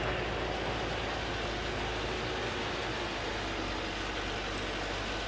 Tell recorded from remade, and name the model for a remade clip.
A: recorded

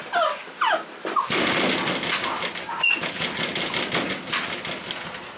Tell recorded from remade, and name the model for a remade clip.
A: recorded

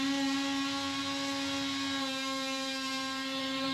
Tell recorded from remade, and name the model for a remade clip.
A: recorded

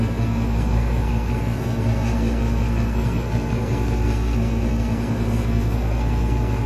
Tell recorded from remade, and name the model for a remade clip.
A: remade, codec, SNAC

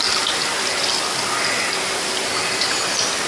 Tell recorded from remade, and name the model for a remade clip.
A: recorded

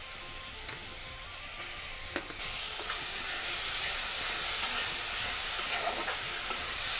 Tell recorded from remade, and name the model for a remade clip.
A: recorded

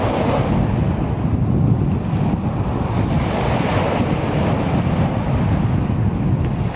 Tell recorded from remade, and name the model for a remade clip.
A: recorded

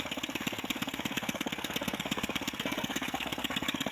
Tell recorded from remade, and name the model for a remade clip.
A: remade, codec, SNAC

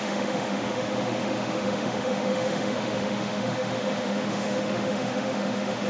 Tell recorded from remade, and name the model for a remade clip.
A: remade, autoencoder, DAC-VAE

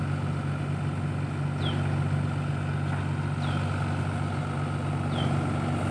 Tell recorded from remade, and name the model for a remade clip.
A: recorded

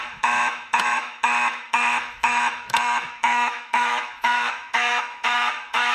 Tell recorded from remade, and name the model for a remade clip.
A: remade, autoencoder, DAC-VAE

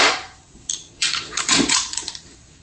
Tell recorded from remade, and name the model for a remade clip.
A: remade, vocoder, Vocos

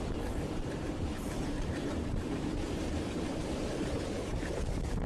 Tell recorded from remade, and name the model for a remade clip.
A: remade, vocoder, BigVGAN v2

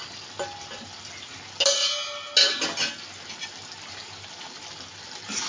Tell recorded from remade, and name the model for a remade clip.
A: recorded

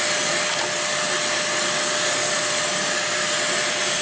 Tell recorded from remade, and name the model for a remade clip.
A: recorded